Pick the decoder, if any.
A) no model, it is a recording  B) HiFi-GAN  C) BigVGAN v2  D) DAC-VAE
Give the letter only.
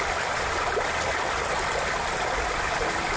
A